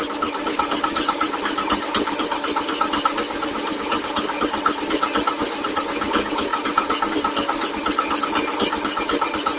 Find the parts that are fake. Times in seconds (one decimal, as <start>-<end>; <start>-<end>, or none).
none